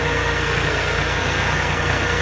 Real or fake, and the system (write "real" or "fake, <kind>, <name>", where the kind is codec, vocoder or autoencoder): fake, codec, SNAC